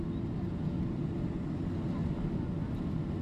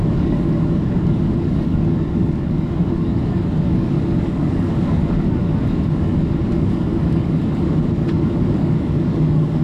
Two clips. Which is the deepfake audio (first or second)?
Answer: second